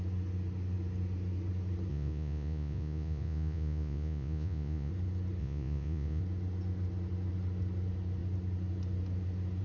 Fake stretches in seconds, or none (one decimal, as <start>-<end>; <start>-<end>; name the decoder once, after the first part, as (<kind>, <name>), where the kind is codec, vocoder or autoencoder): 1.9-4.9 (vocoder, Vocos); 5.4-6.2

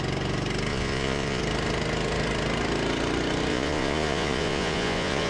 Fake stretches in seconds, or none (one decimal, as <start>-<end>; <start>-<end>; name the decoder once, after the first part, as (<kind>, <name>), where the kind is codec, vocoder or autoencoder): 0.7-1.4 (vocoder, Vocos); 3.5-5.3